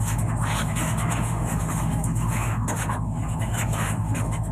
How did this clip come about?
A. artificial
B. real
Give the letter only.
A